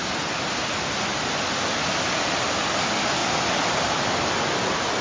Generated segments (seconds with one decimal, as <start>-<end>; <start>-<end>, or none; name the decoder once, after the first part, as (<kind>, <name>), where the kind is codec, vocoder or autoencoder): none